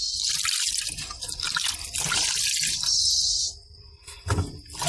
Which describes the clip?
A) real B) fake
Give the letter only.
A